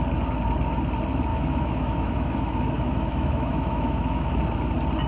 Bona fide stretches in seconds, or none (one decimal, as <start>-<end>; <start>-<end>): 0.0-1.3; 4.4-5.1